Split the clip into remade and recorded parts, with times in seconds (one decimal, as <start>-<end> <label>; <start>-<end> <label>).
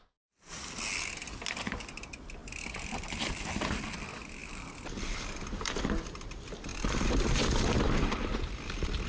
0.0-2.4 recorded; 2.4-3.3 remade; 3.3-4.4 recorded; 4.4-5.8 remade; 5.8-6.7 recorded; 6.7-9.1 remade